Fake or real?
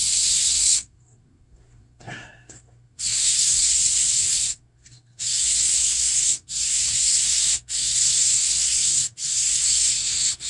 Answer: fake